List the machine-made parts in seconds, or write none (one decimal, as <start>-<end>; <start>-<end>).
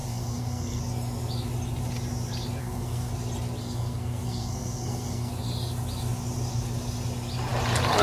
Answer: 0.0-0.8; 2.6-3.1; 3.6-5.3